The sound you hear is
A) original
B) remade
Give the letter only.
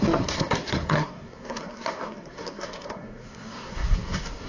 B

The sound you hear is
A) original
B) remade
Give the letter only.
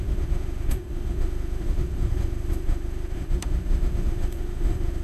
B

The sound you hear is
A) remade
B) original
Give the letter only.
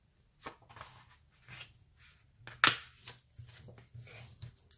B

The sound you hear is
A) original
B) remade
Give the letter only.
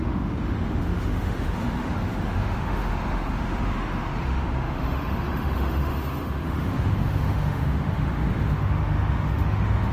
B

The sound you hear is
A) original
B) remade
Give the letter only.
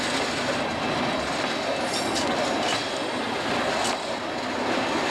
A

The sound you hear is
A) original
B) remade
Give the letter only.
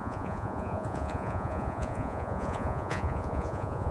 B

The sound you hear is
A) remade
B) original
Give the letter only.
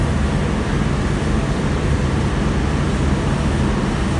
B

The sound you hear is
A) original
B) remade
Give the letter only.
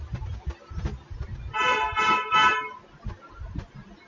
A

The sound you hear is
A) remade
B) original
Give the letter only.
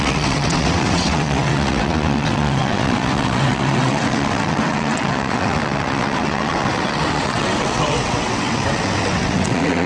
A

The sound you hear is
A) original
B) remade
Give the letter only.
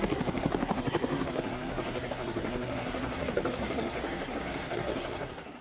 B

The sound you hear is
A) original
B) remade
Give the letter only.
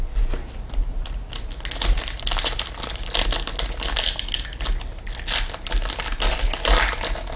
A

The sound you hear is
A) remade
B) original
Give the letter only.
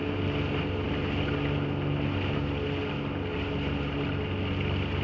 B